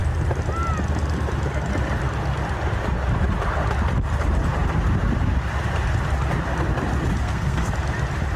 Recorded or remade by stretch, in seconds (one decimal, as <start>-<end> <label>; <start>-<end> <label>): 0.0-7.2 recorded; 7.2-7.7 remade; 7.7-8.4 recorded